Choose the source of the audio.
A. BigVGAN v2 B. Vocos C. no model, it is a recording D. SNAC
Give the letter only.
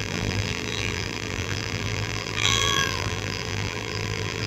A